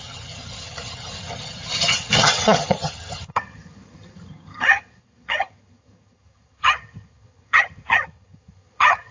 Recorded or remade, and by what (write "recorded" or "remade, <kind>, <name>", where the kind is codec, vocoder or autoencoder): remade, vocoder, HiFi-GAN